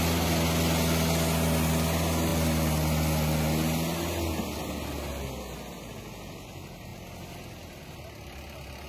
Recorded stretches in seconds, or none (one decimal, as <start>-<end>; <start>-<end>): 0.0-8.9